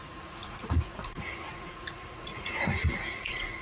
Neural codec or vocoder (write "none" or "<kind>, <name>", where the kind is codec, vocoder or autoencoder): vocoder, Vocos